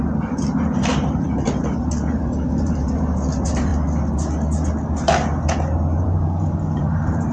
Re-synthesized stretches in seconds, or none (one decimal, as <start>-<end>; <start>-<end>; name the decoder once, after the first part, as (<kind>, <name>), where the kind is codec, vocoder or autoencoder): 0.0-3.7 (vocoder, BigVGAN v2); 6.0-7.3